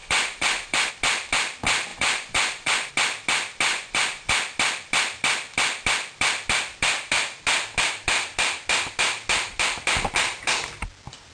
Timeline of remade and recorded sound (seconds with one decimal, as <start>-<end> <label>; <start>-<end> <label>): 0.0-0.9 remade; 0.9-1.9 recorded; 1.9-2.9 remade; 2.9-3.7 recorded; 3.7-4.3 remade; 4.3-11.3 recorded